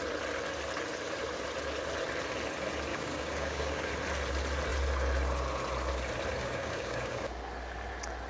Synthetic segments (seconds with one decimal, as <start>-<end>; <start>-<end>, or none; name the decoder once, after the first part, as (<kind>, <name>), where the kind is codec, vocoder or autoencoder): 2.9-3.9 (codec, DAC); 6.4-7.3